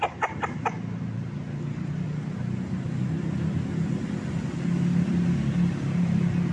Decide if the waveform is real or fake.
real